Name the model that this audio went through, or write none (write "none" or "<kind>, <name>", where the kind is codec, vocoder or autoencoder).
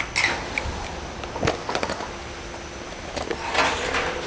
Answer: none